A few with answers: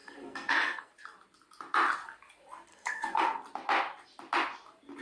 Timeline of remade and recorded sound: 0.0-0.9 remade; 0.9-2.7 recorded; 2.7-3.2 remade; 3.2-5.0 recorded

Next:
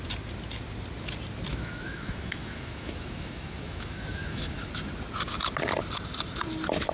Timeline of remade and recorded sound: 0.0-1.5 recorded; 1.5-4.7 remade; 4.7-6.9 recorded

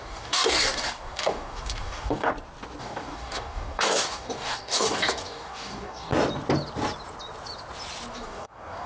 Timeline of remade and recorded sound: 0.0-2.3 remade; 2.3-2.8 recorded; 2.8-6.1 remade; 6.1-8.1 recorded; 8.1-8.9 remade

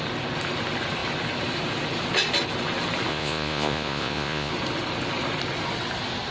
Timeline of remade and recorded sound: 0.0-3.1 recorded; 3.1-4.5 remade; 4.5-6.3 recorded

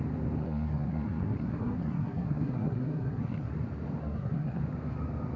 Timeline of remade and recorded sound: 0.0-0.4 recorded; 0.4-3.5 remade; 3.5-4.0 recorded; 4.0-4.6 remade; 4.6-5.4 recorded

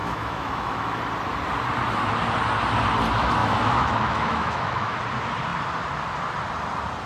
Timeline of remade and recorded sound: 0.0-1.0 remade; 1.0-3.4 recorded; 3.4-5.0 remade; 5.0-7.1 recorded